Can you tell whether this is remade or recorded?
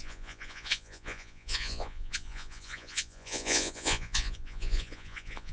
remade